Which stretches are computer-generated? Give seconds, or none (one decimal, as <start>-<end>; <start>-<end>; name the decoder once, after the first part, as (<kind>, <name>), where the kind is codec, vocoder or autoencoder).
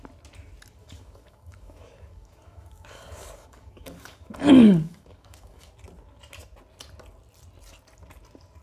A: 0.8-5.7 (codec, DAC)